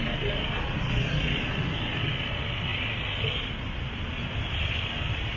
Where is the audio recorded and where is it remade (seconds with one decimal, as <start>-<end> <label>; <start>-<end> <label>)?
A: 0.0-5.4 recorded

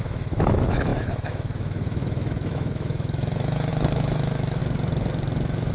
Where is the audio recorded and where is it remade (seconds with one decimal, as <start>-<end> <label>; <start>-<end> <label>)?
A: 0.0-4.6 remade; 4.6-5.7 recorded

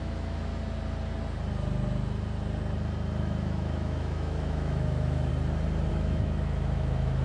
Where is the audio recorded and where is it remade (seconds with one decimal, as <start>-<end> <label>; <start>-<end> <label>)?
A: 0.0-0.5 remade; 0.5-3.2 recorded; 3.2-5.3 remade; 5.3-5.9 recorded; 5.9-7.2 remade

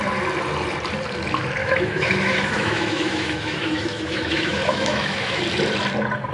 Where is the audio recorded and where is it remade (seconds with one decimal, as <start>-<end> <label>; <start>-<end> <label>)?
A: 0.0-1.6 recorded; 1.6-5.4 remade; 5.4-6.3 recorded

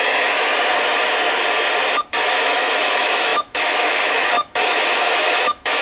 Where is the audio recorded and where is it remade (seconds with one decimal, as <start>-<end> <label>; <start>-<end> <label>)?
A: 0.0-0.5 remade; 0.5-2.1 recorded; 2.1-5.8 remade

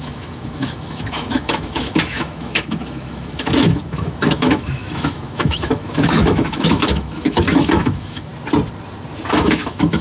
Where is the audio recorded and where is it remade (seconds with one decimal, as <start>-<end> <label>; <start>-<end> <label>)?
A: 0.0-8.3 remade; 8.3-9.3 recorded; 9.3-10.0 remade